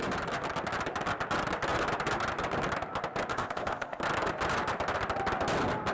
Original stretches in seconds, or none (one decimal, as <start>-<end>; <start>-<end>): 0.0-3.3; 4.0-5.9